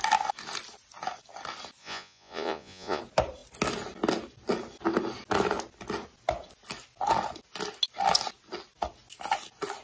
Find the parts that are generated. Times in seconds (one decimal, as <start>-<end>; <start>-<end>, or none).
1.8-3.0